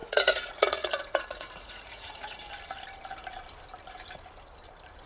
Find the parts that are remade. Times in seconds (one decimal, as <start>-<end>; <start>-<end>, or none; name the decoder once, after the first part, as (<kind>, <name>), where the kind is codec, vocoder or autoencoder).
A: 0.0-2.4 (vocoder, Vocos)